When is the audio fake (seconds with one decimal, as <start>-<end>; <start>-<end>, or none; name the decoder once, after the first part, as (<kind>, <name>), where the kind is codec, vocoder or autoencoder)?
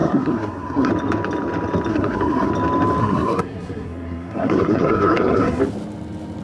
0.0-0.9 (codec, SNAC); 1.9-2.5; 3.0-5.6